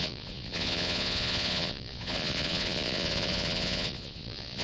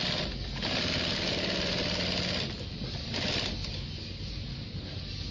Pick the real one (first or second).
second